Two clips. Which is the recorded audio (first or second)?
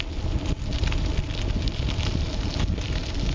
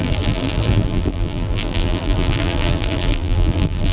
first